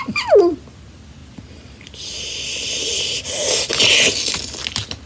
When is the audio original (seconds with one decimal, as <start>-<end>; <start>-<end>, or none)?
0.0-5.1